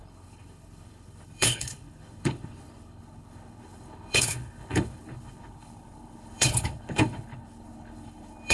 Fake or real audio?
fake